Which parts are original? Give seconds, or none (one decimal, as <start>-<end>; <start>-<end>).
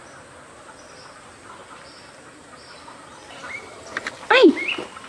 0.0-1.6